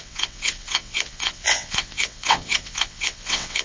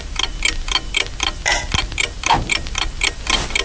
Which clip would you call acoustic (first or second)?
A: second